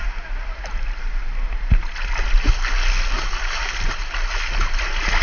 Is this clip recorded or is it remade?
recorded